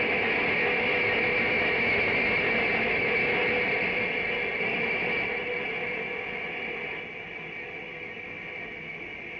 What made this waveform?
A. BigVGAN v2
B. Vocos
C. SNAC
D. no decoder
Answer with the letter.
D